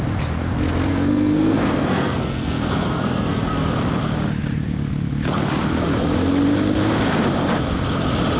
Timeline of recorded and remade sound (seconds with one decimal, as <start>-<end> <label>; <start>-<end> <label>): 0.0-0.9 recorded; 0.9-3.7 remade; 3.7-8.4 recorded